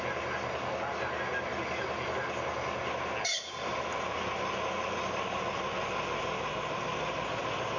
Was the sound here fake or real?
real